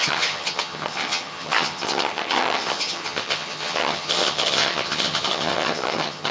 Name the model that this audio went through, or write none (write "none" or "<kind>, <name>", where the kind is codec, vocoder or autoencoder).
vocoder, HiFi-GAN